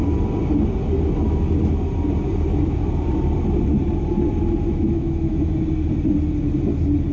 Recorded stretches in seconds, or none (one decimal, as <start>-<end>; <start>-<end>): 0.0-4.7; 5.5-7.1